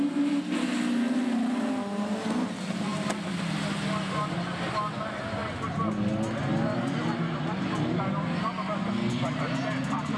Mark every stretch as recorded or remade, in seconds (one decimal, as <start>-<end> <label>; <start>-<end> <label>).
0.0-10.2 recorded